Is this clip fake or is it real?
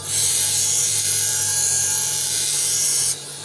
fake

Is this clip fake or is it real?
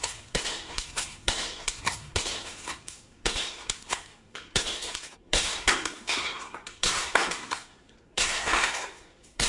fake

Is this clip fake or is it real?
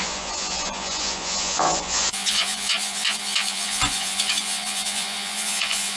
fake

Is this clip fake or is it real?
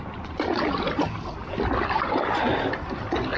real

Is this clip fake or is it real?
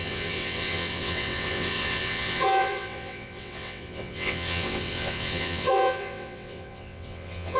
fake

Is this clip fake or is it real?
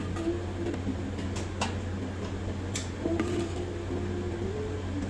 real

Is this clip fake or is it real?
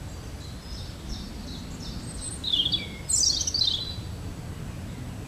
real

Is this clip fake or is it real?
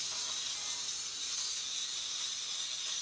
real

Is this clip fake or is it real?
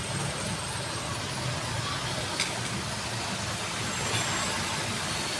real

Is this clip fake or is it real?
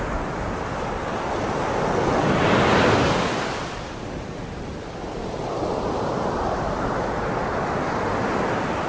real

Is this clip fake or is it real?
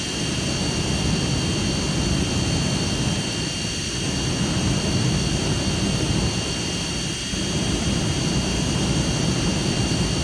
fake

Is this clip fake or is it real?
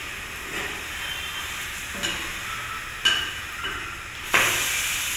real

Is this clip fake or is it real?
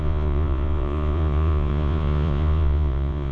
fake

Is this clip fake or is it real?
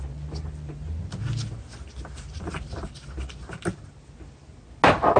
real